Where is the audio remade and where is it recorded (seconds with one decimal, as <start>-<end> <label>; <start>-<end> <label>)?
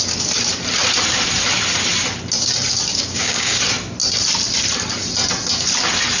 0.0-2.9 recorded; 2.9-3.6 remade; 3.6-6.2 recorded